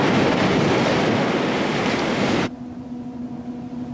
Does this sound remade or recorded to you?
recorded